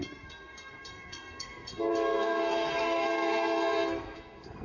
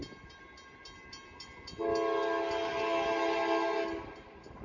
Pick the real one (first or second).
second